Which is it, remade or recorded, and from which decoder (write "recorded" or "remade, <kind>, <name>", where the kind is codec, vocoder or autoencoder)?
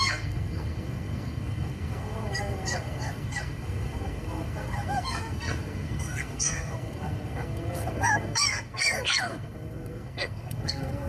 remade, codec, SNAC